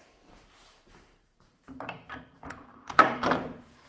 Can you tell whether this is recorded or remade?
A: remade